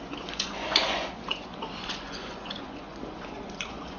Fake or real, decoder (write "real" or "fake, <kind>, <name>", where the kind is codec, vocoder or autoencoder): fake, vocoder, Vocos